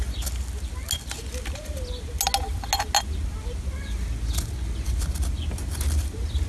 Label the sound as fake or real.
real